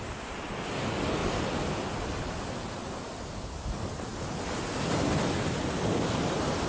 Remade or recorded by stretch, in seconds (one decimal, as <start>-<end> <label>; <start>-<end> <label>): 0.0-6.7 recorded